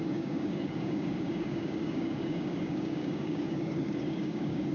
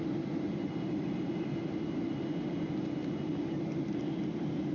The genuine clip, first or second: second